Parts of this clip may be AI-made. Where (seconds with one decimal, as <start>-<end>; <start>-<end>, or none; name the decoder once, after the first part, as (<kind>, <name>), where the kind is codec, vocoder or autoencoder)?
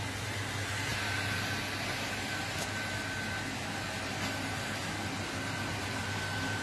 none